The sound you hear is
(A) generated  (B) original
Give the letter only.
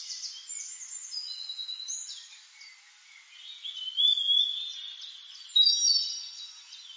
B